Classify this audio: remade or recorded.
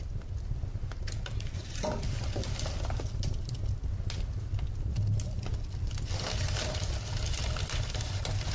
recorded